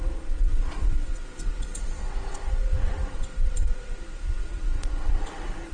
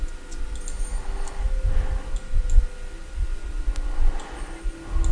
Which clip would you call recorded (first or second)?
second